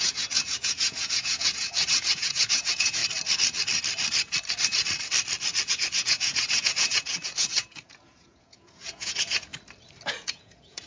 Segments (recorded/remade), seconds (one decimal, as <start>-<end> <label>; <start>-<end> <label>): 0.0-3.0 remade; 3.0-5.7 recorded; 5.7-9.5 remade; 9.5-10.1 recorded; 10.1-10.9 remade